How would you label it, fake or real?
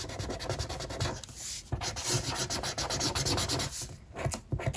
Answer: real